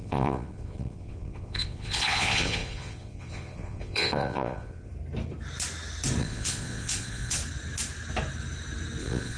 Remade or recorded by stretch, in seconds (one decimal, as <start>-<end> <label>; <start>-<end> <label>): 0.0-4.9 remade; 4.9-6.2 recorded; 6.2-7.4 remade; 7.4-9.0 recorded; 9.0-9.4 remade